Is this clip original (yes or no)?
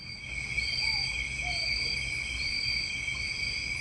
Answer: yes